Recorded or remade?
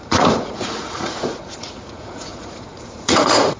remade